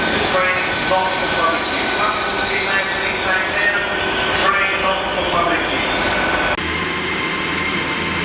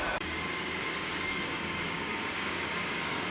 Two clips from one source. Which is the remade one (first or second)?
second